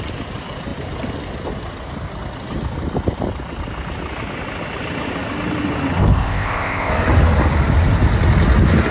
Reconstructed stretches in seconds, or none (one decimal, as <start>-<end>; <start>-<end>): 6.0-6.9